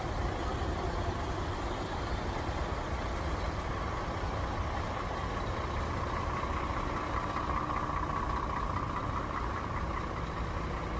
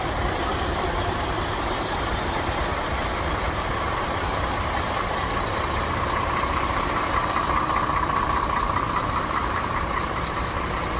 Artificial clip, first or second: second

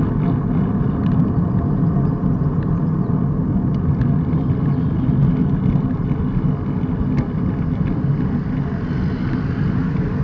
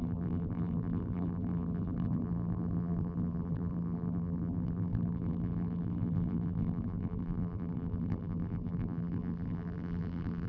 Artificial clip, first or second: second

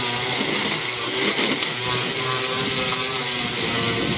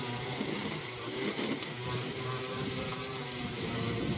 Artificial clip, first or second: second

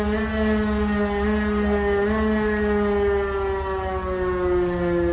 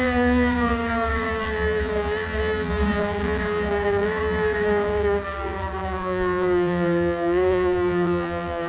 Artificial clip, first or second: second